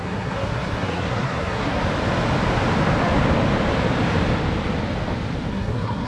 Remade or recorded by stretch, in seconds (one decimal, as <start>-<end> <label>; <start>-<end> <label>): 0.0-1.8 remade; 1.8-5.5 recorded; 5.5-6.1 remade